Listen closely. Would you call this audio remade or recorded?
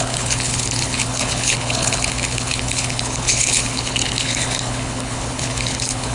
remade